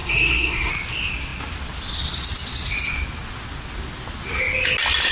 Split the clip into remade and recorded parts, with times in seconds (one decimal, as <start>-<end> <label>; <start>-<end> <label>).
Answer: 0.0-0.7 remade; 0.7-5.1 recorded

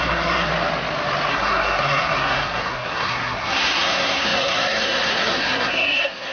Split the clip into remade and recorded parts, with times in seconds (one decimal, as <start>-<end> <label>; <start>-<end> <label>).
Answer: 0.0-0.5 remade; 0.5-1.3 recorded; 1.3-6.3 remade

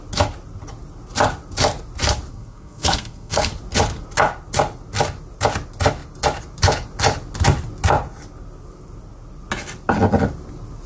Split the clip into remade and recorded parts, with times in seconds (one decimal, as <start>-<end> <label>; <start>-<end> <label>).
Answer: 0.0-2.3 recorded; 2.3-3.5 remade; 3.5-10.9 recorded

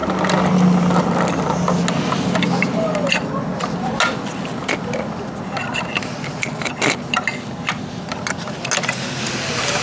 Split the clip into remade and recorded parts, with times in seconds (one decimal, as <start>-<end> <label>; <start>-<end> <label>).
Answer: 0.0-9.8 recorded

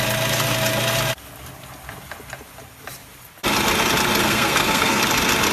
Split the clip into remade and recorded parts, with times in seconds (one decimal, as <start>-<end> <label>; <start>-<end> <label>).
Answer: 0.0-4.2 recorded; 4.2-5.0 remade; 5.0-5.5 recorded

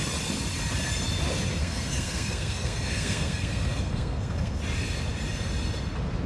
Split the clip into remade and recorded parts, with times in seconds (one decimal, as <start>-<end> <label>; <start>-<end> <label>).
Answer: 0.0-1.6 recorded; 1.6-4.6 remade; 4.6-6.3 recorded

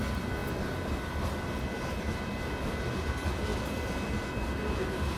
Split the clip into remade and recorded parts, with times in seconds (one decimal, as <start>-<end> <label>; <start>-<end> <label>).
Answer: 0.0-5.2 recorded

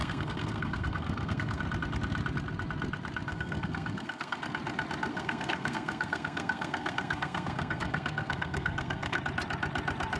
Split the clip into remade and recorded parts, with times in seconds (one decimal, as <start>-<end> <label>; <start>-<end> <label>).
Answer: 0.0-1.6 remade; 1.6-3.3 recorded; 3.3-4.4 remade; 4.4-5.1 recorded; 5.1-9.2 remade; 9.2-10.2 recorded